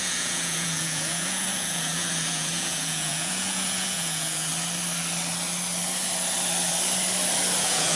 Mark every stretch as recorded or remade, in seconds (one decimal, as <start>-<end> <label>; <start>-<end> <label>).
0.0-4.5 remade; 4.5-7.6 recorded; 7.6-8.0 remade